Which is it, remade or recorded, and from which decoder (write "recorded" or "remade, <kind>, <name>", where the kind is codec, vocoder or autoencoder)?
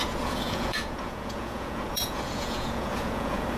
remade, vocoder, Vocos